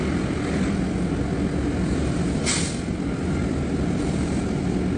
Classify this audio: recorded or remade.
recorded